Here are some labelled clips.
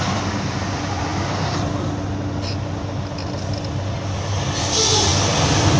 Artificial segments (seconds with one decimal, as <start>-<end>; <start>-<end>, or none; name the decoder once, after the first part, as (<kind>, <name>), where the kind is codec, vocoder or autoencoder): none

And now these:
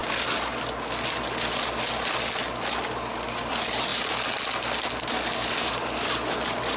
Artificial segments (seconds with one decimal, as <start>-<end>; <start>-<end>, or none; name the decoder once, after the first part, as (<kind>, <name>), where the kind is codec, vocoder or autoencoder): none

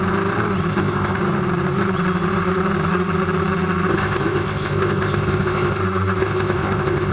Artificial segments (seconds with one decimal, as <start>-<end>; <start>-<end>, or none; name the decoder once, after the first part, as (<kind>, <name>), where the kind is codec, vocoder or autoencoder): 0.7-1.2 (codec, ZipCodec); 3.9-5.8; 6.2-7.1

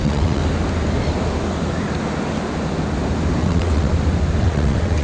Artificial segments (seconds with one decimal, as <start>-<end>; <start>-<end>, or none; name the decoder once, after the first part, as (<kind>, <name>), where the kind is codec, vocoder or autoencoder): 0.0-0.4 (vocoder, WaveNeXt); 3.4-3.9; 4.4-5.0

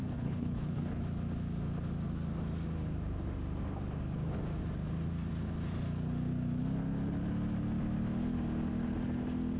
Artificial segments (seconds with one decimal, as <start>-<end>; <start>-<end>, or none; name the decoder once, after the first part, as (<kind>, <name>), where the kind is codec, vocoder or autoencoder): 0.0-1.0 (codec, HILCodec)